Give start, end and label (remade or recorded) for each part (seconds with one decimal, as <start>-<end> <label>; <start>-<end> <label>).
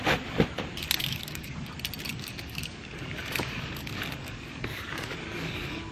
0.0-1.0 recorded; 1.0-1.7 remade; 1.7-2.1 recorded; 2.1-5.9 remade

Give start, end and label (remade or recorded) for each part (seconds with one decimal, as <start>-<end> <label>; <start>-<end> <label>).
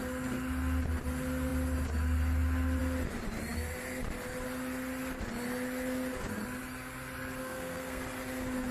0.0-7.4 recorded; 7.4-8.0 remade; 8.0-8.7 recorded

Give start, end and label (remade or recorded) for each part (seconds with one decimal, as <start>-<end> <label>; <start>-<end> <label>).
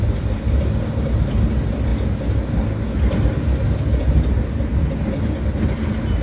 0.0-6.2 recorded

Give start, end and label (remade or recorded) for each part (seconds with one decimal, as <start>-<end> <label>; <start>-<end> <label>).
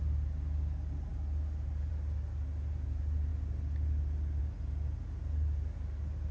0.0-6.3 recorded